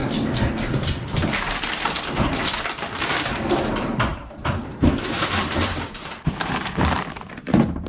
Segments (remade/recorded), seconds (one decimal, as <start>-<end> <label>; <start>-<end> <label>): 0.0-3.3 recorded; 3.3-7.9 remade